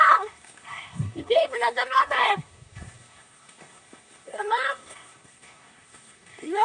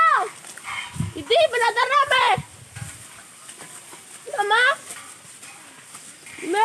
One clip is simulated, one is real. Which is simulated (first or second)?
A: first